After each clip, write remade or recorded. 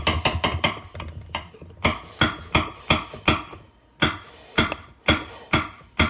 recorded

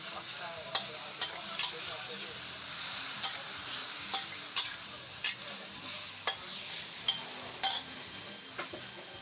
recorded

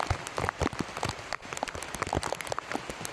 recorded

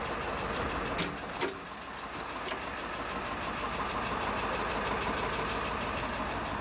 recorded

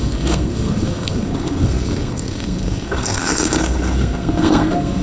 remade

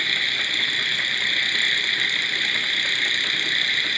recorded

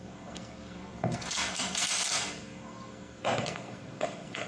remade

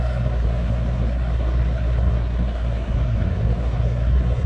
remade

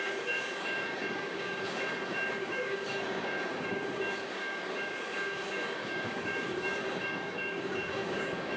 remade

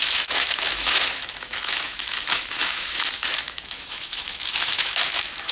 remade